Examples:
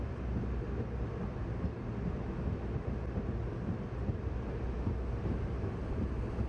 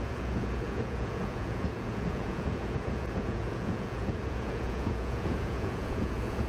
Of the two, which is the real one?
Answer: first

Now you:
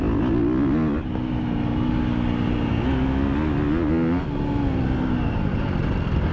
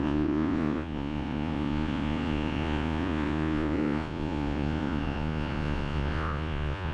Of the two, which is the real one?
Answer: first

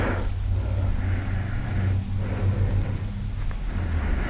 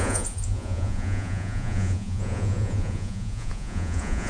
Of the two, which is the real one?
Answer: first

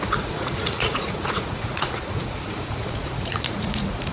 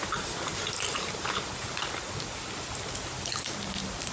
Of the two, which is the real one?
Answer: second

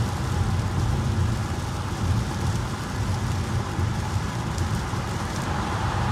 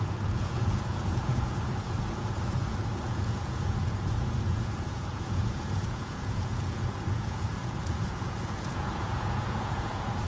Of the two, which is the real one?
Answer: first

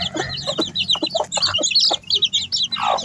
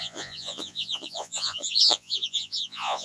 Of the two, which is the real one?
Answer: first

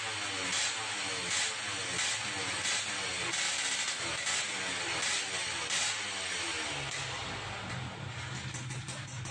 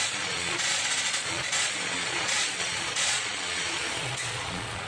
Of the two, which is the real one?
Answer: first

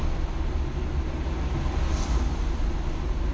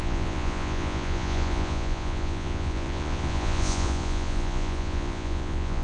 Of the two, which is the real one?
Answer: first